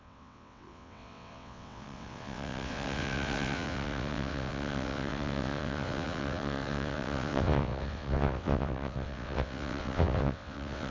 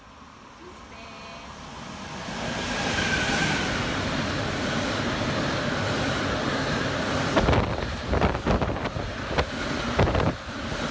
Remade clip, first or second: first